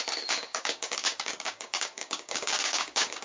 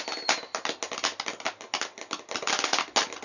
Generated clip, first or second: first